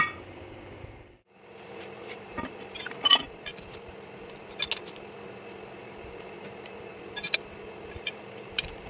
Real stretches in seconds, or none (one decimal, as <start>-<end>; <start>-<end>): 3.5-5.8; 6.9-7.9